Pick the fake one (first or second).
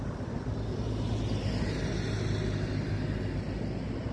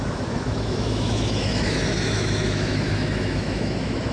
second